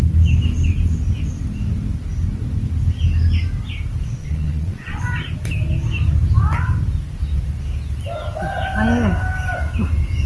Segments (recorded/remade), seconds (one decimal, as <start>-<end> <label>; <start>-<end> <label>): 0.0-4.2 recorded; 4.2-5.0 remade; 5.0-10.3 recorded